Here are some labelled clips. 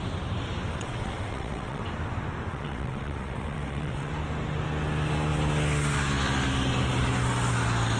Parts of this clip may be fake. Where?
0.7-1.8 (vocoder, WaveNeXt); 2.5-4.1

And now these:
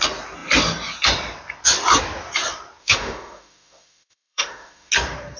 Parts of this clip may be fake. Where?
2.8-4.9 (autoencoder, DAC-VAE)

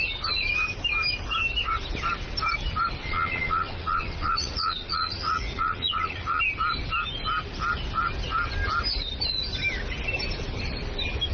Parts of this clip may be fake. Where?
3.0-6.4 (vocoder, Vocos)

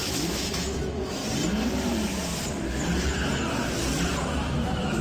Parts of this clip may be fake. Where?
0.0-1.2 (autoencoder, DAC-VAE); 4.2-5.0

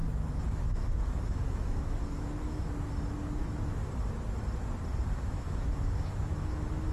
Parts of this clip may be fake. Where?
0.0-2.7 (autoencoder, DAC-VAE); 3.4-3.9; 5.1-6.9